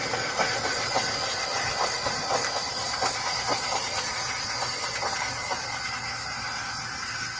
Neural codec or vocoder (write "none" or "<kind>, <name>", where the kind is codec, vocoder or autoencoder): none